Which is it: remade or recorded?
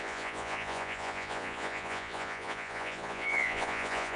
remade